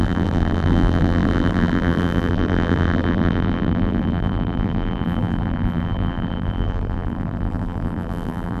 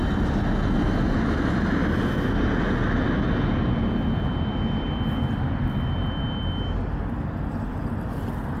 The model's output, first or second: first